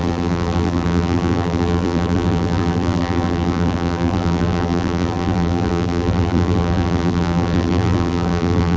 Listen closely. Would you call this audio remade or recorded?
remade